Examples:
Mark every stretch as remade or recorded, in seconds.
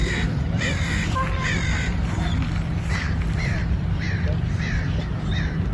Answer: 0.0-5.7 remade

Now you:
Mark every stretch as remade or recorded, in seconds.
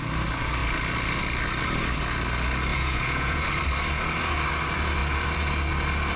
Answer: 0.0-2.7 recorded; 2.7-3.4 remade; 3.4-6.2 recorded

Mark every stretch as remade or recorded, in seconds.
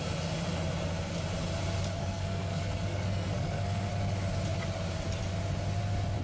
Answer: 0.0-2.0 recorded; 2.0-3.9 remade; 3.9-6.2 recorded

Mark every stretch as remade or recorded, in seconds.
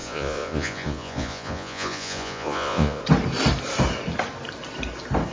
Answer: 0.0-3.0 remade; 3.0-5.3 recorded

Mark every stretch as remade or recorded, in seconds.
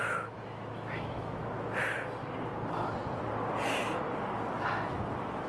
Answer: 0.0-1.4 remade; 1.4-4.7 recorded; 4.7-5.5 remade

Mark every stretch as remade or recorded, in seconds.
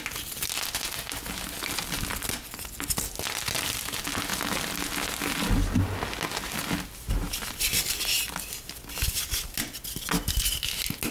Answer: 0.0-11.1 recorded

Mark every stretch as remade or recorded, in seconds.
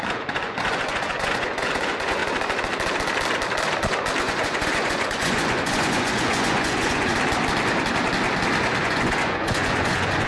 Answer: 0.0-2.2 remade; 2.2-4.2 recorded; 4.2-7.1 remade; 7.1-8.8 recorded; 8.8-10.3 remade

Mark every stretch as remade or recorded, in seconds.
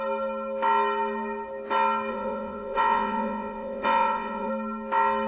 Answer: 0.0-2.1 recorded; 2.1-4.5 remade; 4.5-5.3 recorded